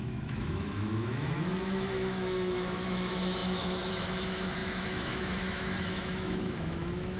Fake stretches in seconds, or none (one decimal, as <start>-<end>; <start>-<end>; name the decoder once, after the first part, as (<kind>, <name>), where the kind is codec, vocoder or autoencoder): 0.0-7.2 (autoencoder, DAC-VAE)